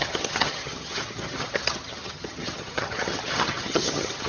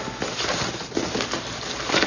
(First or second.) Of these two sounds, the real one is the second